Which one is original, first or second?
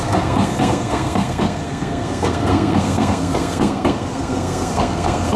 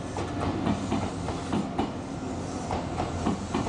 second